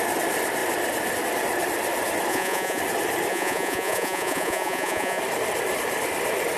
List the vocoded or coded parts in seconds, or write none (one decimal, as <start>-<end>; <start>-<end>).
2.3-2.8; 3.3-5.2